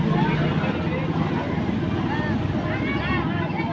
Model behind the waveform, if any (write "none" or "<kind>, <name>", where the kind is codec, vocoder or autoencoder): none